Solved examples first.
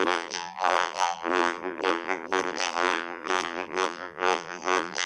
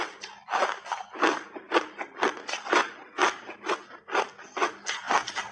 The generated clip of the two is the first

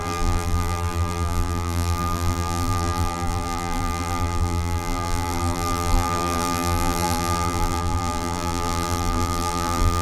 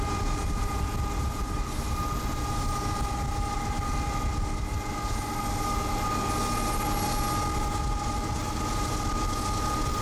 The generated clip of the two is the first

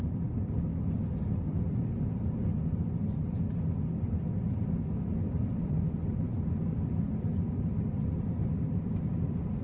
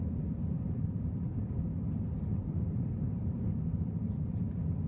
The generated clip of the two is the second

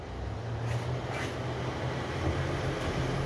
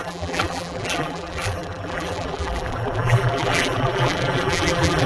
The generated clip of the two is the second